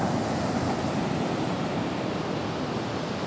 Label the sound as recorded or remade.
recorded